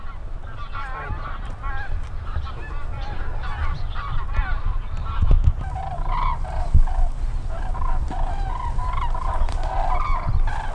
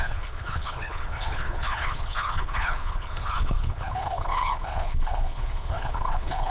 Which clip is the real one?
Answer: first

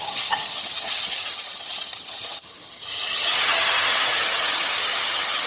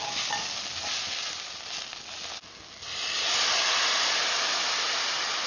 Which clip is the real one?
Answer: second